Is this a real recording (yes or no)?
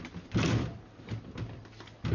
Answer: yes